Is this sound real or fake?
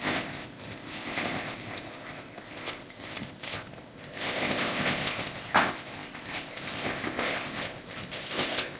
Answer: fake